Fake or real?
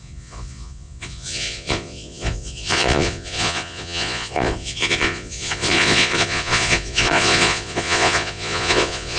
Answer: fake